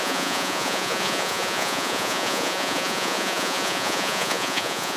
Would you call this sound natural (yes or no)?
no